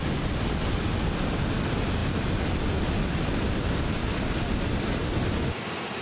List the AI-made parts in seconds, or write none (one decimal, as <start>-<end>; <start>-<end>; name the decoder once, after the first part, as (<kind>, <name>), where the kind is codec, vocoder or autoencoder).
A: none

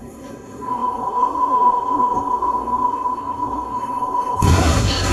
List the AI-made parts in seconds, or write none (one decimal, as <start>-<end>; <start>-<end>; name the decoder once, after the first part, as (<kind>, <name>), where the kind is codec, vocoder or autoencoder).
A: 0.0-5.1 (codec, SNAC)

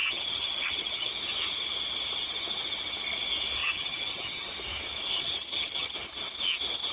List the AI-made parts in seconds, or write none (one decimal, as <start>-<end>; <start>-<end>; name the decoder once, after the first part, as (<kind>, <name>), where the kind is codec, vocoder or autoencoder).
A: 0.0-1.1 (vocoder, HiFi-GAN); 3.6-4.5; 5.1-5.9

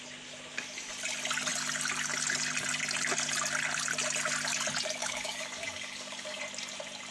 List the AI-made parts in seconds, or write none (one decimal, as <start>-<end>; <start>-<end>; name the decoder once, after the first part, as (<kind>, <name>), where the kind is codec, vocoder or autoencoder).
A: 5.0-6.4 (codec, DAC)

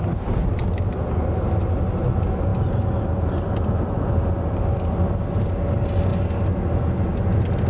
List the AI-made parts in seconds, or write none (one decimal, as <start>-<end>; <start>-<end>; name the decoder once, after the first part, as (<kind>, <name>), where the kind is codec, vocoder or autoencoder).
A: none

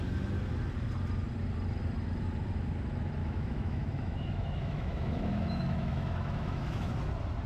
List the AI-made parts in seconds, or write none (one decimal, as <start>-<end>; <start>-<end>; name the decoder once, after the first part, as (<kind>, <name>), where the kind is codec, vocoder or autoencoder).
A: 3.2-6.9 (autoencoder, DAC-VAE)